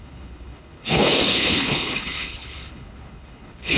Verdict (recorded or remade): remade